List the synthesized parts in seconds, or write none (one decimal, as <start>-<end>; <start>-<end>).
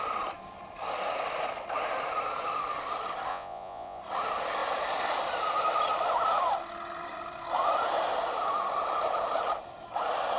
3.3-4.0